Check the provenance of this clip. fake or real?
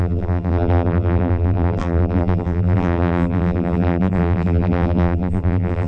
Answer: fake